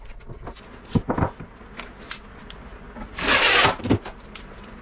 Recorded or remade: recorded